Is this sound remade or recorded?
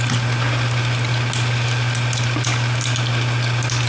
recorded